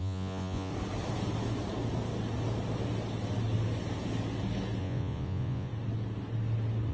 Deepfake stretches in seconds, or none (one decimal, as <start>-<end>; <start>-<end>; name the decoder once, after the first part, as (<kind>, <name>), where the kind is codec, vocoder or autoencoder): 0.0-0.7 (vocoder, Vocos); 4.8-5.7